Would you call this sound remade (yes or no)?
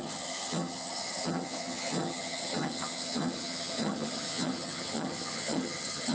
yes